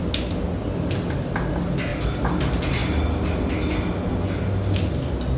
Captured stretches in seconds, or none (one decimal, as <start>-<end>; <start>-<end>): 0.0-5.4